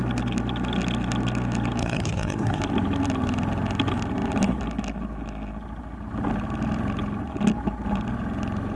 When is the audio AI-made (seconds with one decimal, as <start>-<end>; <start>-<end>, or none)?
1.8-2.6

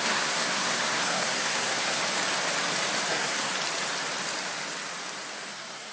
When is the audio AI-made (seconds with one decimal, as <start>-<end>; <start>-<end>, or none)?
0.0-2.0; 3.1-3.5; 5.5-5.9

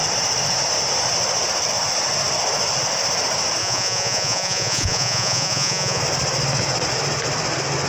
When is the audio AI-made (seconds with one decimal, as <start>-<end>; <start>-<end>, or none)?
3.6-6.0

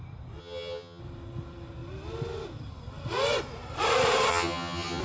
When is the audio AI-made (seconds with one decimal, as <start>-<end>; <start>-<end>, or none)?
0.4-1.0; 4.3-5.0

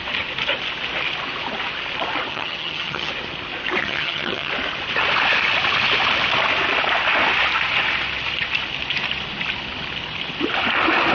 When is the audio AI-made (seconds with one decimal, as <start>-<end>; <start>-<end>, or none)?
2.3-3.1; 3.8-4.5